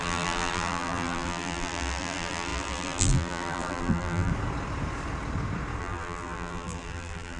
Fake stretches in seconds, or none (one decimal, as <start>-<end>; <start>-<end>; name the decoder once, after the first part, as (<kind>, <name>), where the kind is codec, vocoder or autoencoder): 0.0-4.3 (vocoder, BigVGAN v2); 5.8-7.4